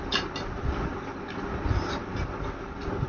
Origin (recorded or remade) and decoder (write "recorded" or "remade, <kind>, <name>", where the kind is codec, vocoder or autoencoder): recorded